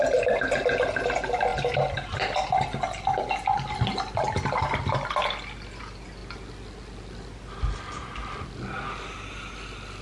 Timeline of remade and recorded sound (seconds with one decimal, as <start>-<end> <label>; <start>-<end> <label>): 0.0-10.0 recorded